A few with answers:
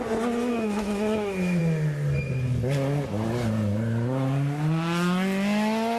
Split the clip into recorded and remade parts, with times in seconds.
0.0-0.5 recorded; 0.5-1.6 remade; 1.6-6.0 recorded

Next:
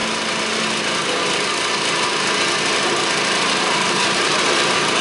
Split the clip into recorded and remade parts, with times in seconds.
0.0-3.0 recorded; 3.0-5.0 remade

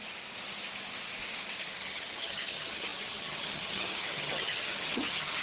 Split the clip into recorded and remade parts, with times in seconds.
0.0-1.8 recorded; 1.8-5.4 remade

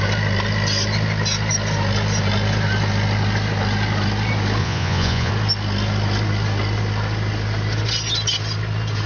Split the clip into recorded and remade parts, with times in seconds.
0.0-4.6 recorded; 4.6-5.3 remade; 5.3-9.1 recorded

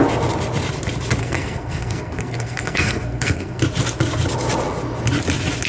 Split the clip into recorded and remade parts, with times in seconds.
0.0-1.2 recorded; 1.2-3.6 remade; 3.6-5.7 recorded

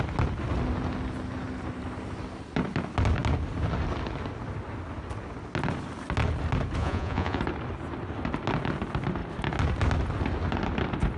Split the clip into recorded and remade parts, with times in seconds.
0.0-6.8 recorded; 6.8-7.4 remade; 7.4-11.2 recorded